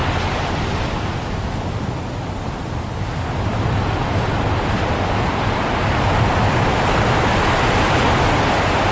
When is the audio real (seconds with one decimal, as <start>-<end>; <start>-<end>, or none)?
0.6-8.9